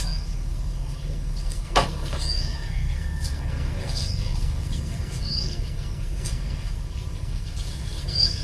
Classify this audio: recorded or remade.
remade